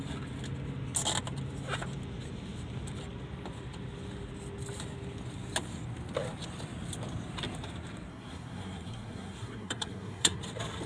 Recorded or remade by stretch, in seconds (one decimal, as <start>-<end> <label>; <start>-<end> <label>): 0.0-8.1 recorded; 8.1-10.4 remade; 10.4-10.9 recorded